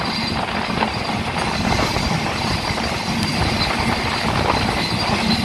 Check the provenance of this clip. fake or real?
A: real